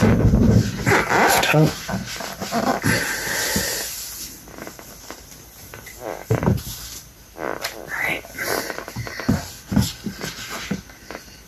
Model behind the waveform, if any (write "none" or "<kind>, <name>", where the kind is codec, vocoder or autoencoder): none